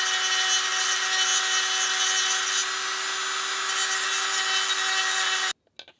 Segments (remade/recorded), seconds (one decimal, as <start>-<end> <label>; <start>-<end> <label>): 0.0-6.0 recorded